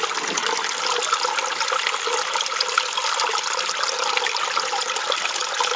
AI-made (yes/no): no